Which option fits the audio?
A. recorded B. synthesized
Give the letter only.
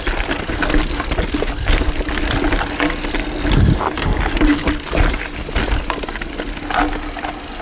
A